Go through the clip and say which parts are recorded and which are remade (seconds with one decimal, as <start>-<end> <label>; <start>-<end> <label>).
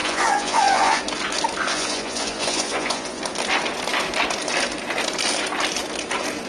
0.0-1.0 remade; 1.0-1.7 recorded; 1.7-3.2 remade; 3.2-6.5 recorded